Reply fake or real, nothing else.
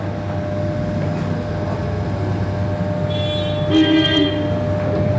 real